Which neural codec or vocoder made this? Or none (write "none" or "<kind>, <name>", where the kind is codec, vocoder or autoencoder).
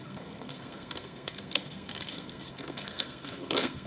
codec, SNAC